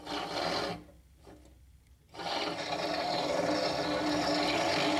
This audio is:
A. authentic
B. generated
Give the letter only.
A